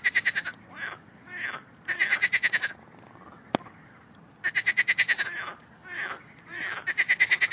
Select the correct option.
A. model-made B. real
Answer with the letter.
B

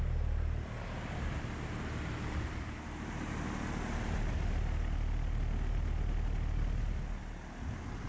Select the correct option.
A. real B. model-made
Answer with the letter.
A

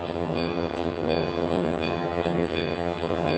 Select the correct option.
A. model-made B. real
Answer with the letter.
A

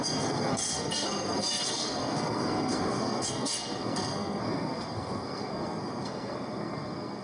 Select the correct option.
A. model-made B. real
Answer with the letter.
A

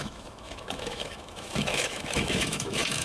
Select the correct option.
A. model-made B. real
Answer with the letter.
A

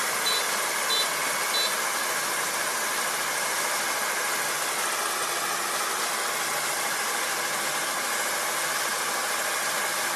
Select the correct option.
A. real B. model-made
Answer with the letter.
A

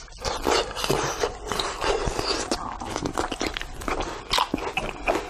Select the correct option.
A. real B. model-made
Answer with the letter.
A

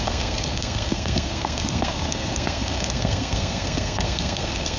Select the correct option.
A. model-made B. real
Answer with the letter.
A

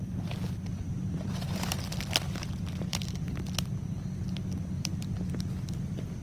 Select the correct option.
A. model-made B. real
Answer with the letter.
A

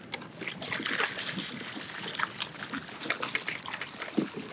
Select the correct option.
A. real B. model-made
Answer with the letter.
A